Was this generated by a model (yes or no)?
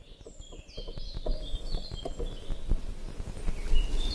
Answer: no